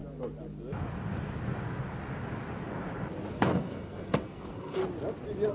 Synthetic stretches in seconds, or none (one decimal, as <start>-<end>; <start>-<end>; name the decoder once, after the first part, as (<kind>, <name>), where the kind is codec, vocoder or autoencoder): 3.3-4.8 (codec, SNAC)